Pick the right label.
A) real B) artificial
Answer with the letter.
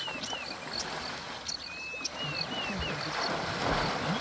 A